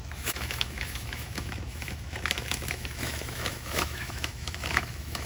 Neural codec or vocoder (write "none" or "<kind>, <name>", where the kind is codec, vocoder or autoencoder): autoencoder, DAC-VAE